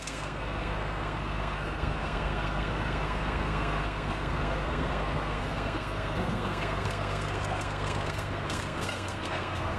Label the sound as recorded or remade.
remade